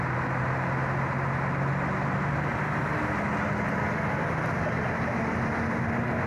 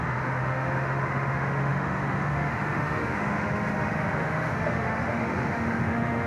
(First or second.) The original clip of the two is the first